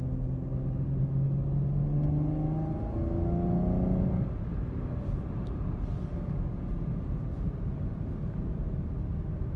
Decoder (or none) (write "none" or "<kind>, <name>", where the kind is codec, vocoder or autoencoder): none